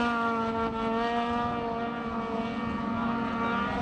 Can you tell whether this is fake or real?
real